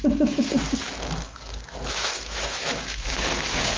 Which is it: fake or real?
fake